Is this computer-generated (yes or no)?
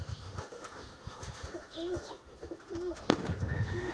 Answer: yes